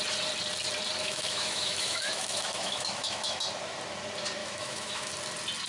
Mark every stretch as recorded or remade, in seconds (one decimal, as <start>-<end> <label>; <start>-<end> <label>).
0.0-1.0 recorded; 1.0-3.4 remade; 3.4-4.4 recorded; 4.4-5.1 remade; 5.1-5.7 recorded